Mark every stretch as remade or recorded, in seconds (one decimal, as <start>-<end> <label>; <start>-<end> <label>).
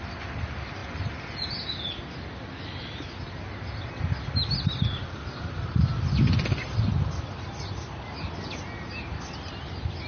0.0-10.1 recorded